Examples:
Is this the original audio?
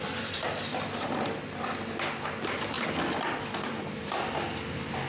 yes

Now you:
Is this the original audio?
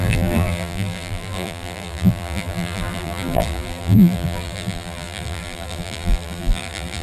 no